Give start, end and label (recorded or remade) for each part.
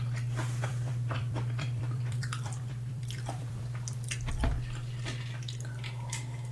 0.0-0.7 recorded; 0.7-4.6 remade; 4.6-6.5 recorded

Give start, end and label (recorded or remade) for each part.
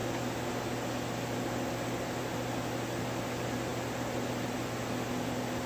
0.0-3.7 recorded; 3.7-4.4 remade; 4.4-5.7 recorded